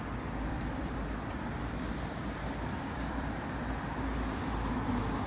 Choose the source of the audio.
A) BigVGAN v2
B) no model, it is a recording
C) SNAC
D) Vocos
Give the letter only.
A